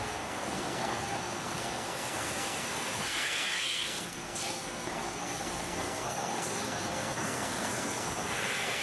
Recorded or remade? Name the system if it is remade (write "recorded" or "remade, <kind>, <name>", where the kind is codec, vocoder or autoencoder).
remade, codec, SNAC